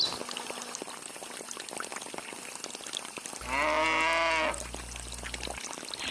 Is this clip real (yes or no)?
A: yes